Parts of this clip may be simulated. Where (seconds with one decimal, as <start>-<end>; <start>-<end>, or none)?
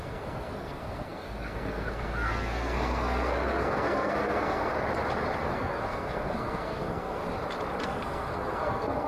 0.0-4.7; 5.4-7.2; 7.8-9.1